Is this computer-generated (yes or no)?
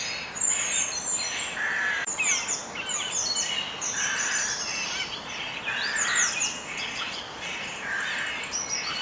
no